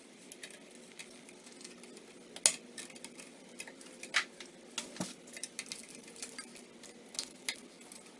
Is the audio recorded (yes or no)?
yes